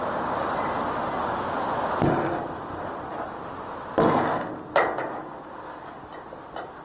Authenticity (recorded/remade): recorded